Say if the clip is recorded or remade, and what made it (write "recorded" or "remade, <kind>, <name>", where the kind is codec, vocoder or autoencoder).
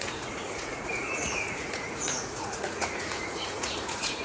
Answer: remade, vocoder, Vocos